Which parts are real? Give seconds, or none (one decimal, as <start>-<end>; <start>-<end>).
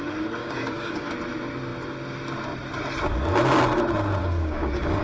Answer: 0.0-0.4; 1.1-4.2